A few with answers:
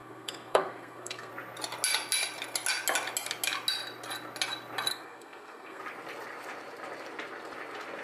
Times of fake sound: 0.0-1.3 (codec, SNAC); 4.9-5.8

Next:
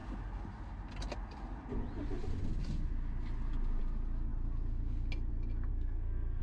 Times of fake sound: 5.7-6.4 (codec, SNAC)

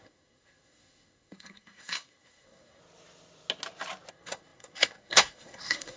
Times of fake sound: 0.0-2.8 (codec, SNAC); 4.1-6.0

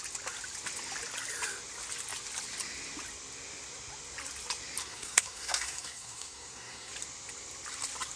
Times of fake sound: 4.8-6.9 (codec, SNAC)

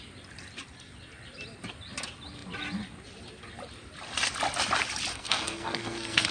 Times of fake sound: 5.1-6.3 (codec, SNAC)